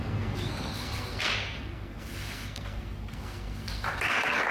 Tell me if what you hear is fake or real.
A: fake